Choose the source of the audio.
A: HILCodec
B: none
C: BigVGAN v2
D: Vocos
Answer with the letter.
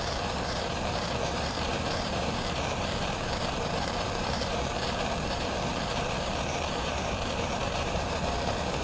C